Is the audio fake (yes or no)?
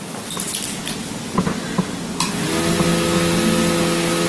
no